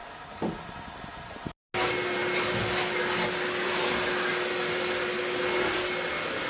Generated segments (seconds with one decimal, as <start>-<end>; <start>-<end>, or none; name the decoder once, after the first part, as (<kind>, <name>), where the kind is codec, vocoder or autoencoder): none